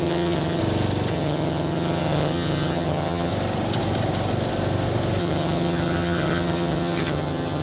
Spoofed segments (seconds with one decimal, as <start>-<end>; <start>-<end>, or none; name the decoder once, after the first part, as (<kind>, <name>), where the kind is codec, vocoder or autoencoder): 0.0-0.6 (vocoder, HiFi-GAN); 1.1-3.3; 5.2-7.6